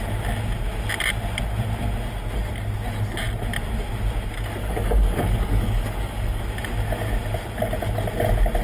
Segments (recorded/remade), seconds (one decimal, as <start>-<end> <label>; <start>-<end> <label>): 0.0-4.6 recorded; 4.6-6.4 remade; 6.4-8.6 recorded

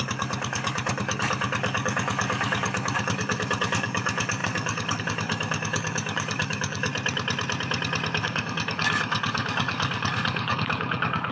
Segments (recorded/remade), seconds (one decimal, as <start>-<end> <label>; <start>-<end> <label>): 0.0-6.9 remade; 6.9-8.2 recorded; 8.2-11.3 remade